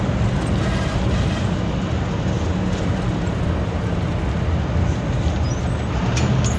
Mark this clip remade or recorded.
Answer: recorded